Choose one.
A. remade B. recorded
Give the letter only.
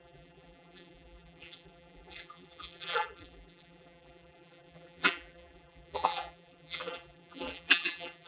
A